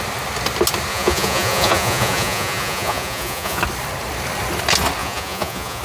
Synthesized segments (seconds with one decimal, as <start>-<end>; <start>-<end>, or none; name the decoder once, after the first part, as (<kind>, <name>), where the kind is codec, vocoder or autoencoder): 0.9-3.6 (vocoder, Vocos); 5.0-5.8